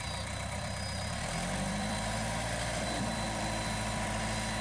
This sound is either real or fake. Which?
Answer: fake